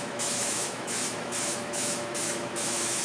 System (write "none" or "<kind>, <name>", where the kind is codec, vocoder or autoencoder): autoencoder, DAC-VAE